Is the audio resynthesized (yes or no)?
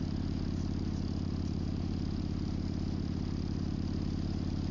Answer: no